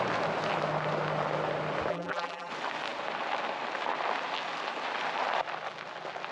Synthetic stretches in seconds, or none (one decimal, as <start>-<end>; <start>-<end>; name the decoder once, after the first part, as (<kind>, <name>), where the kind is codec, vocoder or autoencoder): 1.9-2.5 (vocoder, BigVGAN v2)